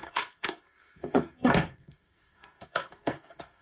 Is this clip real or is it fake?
fake